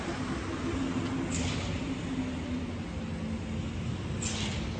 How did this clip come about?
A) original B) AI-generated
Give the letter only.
A